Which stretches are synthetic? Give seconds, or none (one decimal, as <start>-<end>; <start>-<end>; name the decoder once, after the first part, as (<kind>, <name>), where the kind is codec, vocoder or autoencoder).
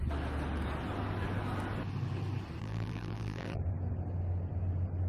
2.6-3.6 (vocoder, BigVGAN v2)